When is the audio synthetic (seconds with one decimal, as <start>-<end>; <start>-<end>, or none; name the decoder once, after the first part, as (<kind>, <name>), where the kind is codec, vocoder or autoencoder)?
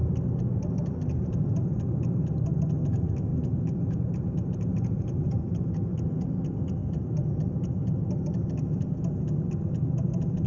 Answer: 3.3-5.7 (vocoder, BigVGAN v2)